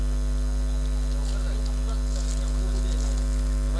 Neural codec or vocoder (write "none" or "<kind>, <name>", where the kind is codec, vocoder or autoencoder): none